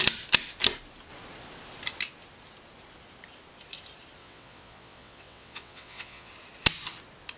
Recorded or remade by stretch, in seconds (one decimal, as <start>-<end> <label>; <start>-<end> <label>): 0.0-4.2 recorded; 4.2-6.3 remade; 6.3-7.4 recorded